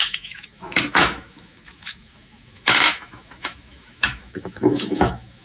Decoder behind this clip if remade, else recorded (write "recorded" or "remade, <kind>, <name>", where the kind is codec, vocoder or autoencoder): remade, autoencoder, DAC-VAE